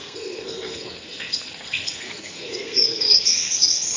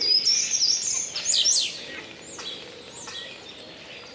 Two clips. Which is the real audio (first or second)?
second